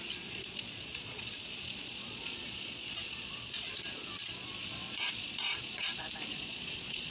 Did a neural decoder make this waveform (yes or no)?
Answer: yes